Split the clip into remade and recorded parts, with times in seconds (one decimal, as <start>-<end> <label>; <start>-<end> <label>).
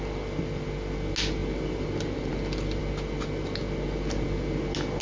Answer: 0.0-5.0 recorded